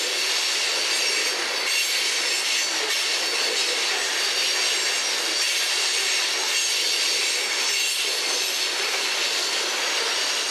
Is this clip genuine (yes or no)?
yes